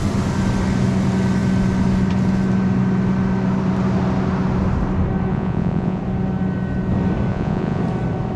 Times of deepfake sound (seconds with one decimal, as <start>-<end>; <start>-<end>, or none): 5.3-6.0; 7.3-7.8